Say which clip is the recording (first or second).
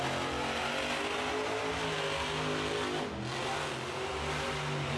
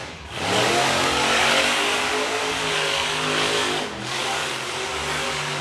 first